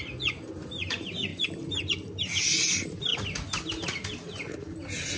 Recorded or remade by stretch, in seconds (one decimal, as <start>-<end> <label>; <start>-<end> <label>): 0.0-5.2 recorded